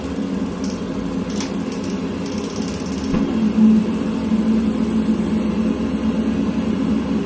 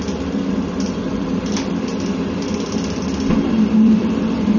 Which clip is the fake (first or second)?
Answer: second